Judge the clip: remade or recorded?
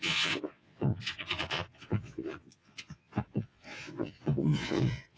remade